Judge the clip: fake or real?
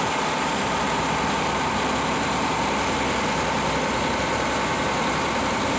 real